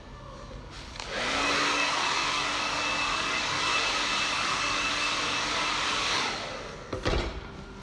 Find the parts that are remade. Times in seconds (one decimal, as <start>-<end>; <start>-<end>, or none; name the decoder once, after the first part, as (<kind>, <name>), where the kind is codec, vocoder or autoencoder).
0.0-3.7 (codec, DAC); 4.3-6.4